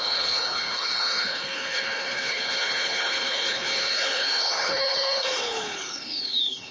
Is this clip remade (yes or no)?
yes